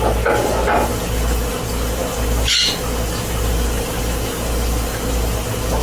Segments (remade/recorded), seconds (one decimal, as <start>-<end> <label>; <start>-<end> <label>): 0.0-5.8 recorded